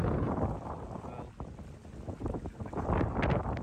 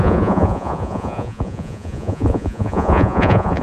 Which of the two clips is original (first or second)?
first